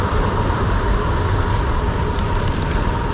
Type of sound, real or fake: fake